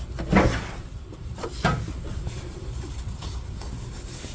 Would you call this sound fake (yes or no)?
no